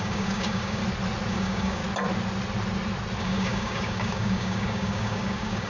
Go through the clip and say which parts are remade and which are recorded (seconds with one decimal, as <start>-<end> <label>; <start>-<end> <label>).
0.0-0.8 remade; 0.8-1.3 recorded; 1.3-1.8 remade; 1.8-3.2 recorded; 3.2-5.7 remade